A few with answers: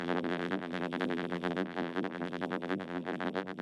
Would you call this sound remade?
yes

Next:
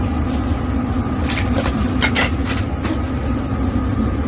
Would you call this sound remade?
no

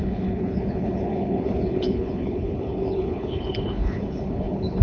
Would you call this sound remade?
yes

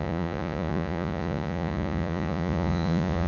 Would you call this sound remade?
yes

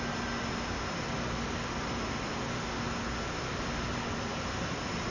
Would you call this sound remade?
no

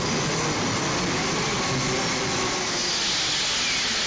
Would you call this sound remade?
no